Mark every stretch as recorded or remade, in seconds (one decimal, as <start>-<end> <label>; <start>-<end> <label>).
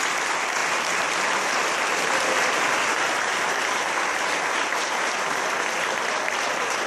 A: 0.0-6.9 recorded